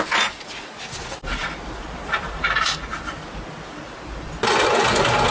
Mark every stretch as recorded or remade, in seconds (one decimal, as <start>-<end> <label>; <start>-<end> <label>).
0.0-5.3 recorded